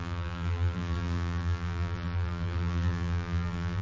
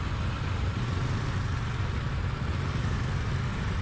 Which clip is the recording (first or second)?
second